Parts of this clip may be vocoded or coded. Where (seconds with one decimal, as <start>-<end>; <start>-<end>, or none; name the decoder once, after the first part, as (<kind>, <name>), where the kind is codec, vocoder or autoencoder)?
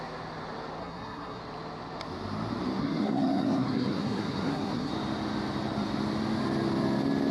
0.8-1.4 (codec, SNAC); 2.8-4.9